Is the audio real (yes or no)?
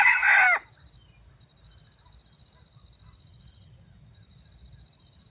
yes